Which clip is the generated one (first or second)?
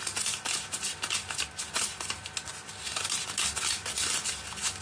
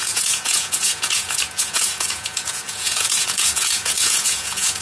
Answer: second